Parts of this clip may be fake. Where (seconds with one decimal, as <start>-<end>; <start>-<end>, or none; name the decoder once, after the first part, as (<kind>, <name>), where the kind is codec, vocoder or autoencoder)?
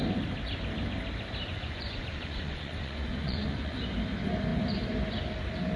1.5-3.8 (vocoder, Vocos)